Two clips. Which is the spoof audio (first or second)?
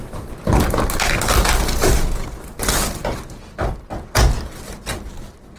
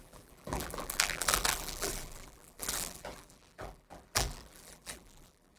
second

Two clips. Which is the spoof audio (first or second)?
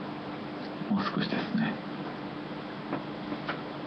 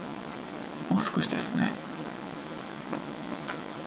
second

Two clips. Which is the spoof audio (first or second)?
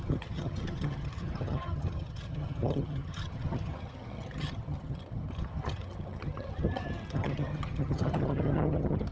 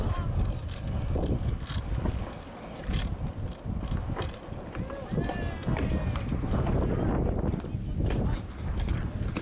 first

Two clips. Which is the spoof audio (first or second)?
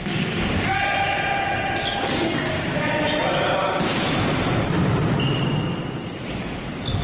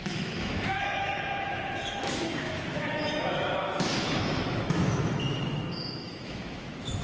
second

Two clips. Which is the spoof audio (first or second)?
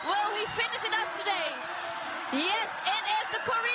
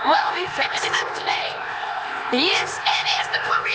second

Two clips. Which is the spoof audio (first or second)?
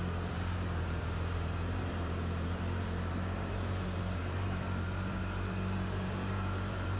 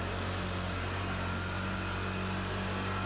first